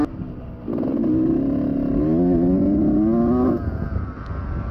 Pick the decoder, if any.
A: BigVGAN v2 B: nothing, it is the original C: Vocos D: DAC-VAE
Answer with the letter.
B